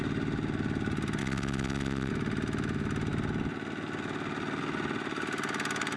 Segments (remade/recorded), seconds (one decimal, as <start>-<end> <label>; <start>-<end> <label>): 0.0-1.2 recorded; 1.2-2.1 remade; 2.1-6.0 recorded